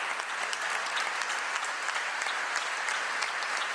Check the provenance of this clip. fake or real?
real